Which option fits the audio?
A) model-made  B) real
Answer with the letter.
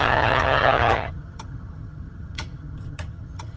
A